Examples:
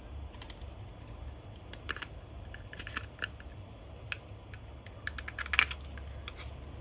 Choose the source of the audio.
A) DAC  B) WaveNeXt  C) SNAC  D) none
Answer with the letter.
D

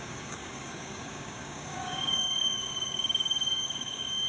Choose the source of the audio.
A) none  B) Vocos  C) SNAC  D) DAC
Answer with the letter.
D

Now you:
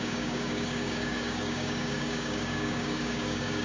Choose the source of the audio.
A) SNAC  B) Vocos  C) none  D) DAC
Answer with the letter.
D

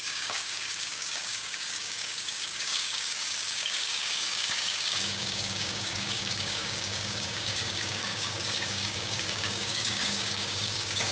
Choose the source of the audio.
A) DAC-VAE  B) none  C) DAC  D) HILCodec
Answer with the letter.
C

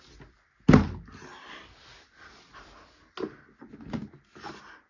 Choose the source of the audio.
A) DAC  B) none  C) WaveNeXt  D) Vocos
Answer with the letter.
B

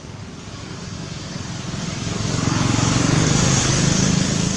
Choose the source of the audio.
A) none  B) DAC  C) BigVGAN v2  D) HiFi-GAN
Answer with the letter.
B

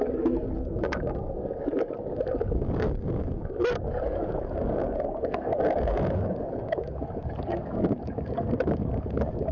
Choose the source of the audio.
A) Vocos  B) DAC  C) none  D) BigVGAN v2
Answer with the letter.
B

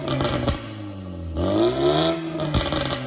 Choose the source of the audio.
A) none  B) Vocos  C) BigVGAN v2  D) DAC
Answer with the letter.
A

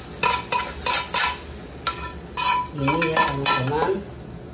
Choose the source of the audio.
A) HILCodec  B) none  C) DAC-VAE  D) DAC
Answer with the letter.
B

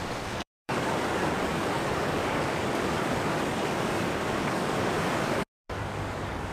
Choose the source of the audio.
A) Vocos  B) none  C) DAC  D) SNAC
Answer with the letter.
C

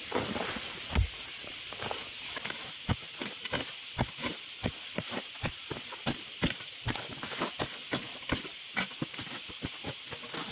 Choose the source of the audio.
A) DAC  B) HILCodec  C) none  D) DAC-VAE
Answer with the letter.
C